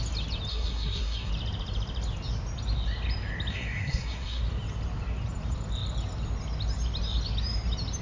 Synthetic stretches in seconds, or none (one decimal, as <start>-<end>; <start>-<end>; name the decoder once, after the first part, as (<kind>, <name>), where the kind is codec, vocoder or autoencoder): 0.5-1.3 (codec, SNAC); 3.5-4.4